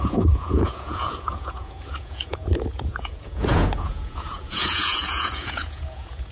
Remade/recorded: remade